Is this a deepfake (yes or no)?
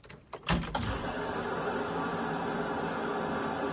no